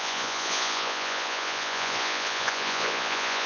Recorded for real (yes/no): no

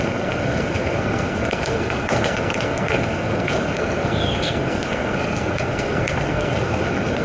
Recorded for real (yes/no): no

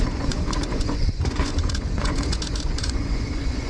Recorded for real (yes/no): no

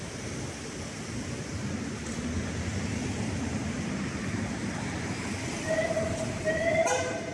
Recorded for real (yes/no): yes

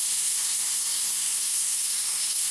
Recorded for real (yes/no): no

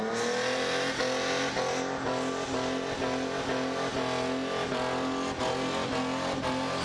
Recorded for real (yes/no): yes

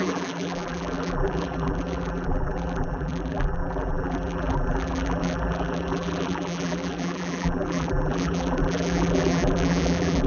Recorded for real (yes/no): no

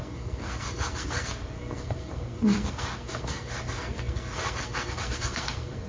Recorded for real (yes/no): no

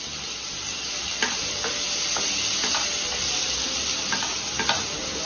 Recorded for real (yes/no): yes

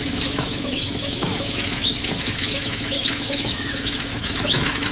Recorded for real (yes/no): no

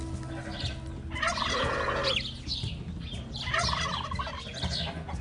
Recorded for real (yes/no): yes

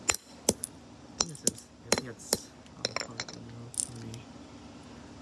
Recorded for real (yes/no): yes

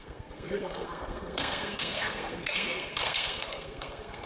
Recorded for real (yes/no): no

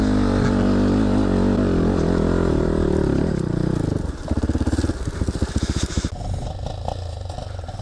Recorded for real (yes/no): yes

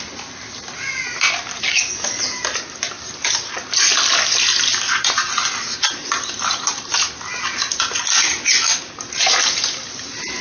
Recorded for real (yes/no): yes